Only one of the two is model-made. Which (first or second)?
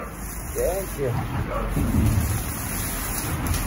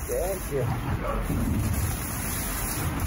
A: second